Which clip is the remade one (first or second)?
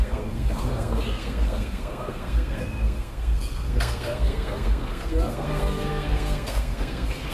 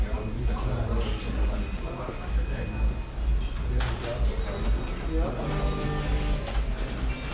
first